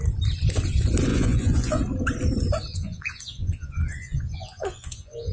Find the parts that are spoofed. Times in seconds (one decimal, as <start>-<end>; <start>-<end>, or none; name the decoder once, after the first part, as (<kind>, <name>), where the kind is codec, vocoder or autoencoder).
1.1-1.8 (vocoder, Vocos); 2.7-5.3